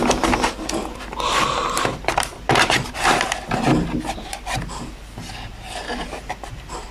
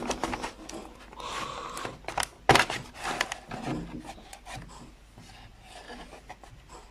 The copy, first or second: first